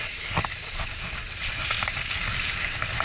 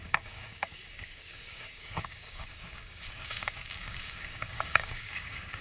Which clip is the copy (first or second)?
second